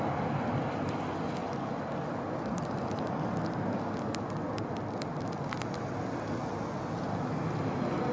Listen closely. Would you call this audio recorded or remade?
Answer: recorded